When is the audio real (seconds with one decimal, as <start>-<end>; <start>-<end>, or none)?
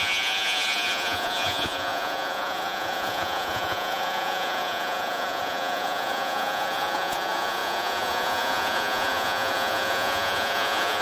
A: none